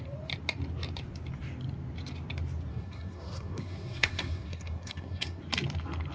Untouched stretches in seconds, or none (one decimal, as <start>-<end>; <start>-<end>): 0.0-2.7; 5.4-6.1